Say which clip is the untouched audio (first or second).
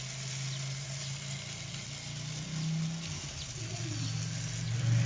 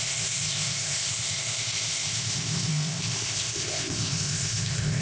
first